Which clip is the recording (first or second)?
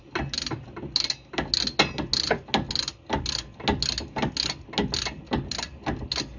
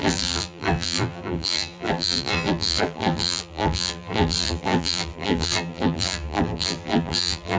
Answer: first